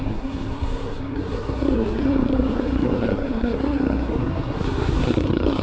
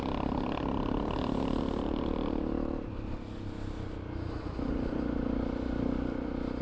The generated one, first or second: first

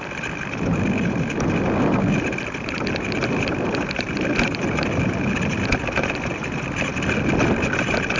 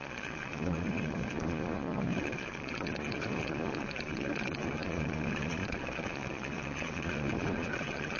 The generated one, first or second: second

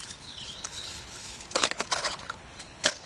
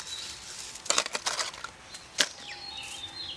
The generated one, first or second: first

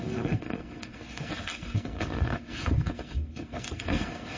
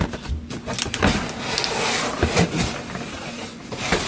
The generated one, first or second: first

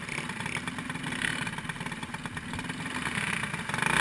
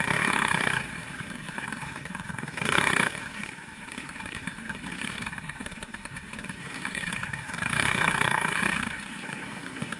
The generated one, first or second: second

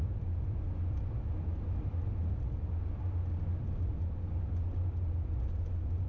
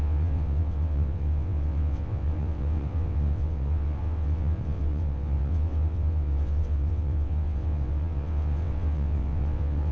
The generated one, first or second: second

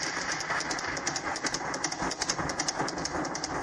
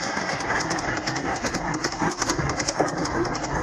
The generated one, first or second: second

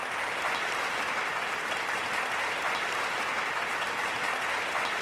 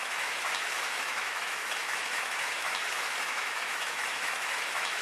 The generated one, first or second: second